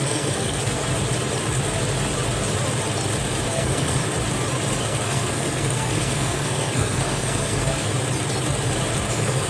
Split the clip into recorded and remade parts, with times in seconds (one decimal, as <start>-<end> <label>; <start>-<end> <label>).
0.0-0.8 remade; 0.8-3.5 recorded; 3.5-4.0 remade; 4.0-4.8 recorded; 4.8-7.9 remade; 7.9-9.1 recorded; 9.1-9.5 remade